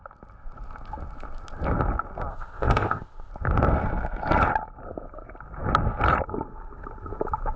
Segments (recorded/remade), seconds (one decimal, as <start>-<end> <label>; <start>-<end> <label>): 0.0-2.3 recorded; 2.3-3.3 remade; 3.3-7.6 recorded